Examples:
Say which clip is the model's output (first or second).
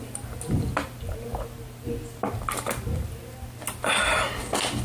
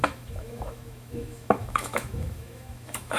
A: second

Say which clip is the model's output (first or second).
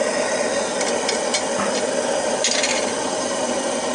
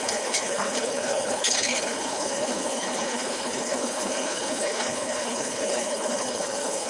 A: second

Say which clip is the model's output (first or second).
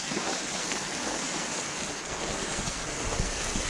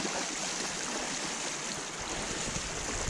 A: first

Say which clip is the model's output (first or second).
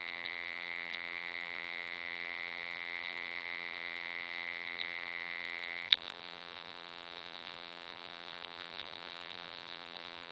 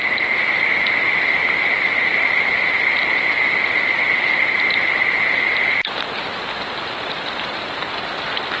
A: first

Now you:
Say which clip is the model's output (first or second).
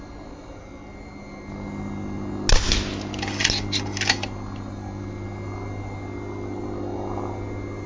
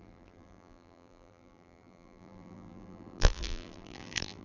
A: second